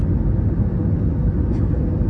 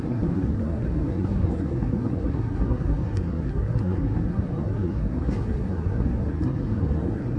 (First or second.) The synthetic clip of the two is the second